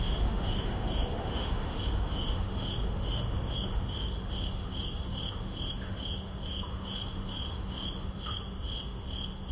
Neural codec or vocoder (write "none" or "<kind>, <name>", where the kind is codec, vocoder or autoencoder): autoencoder, DAC-VAE